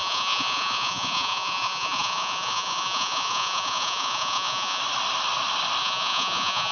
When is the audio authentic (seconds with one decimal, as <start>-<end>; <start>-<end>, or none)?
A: 4.8-5.8

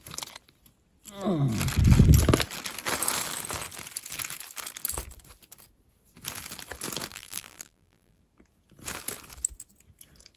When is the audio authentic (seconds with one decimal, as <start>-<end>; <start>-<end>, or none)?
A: 0.0-7.1; 8.2-10.4

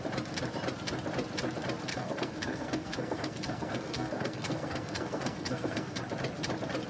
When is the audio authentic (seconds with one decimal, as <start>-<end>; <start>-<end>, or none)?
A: 0.0-1.9; 6.0-6.9

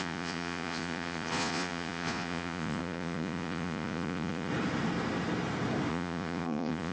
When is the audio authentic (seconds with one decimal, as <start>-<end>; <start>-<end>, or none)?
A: 4.5-5.9